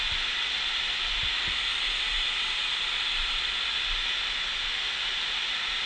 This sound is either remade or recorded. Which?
recorded